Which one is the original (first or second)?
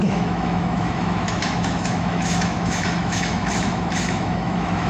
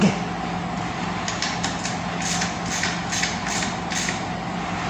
second